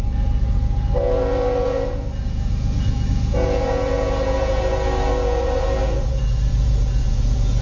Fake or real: fake